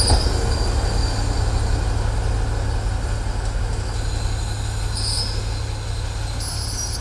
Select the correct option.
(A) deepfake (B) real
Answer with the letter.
B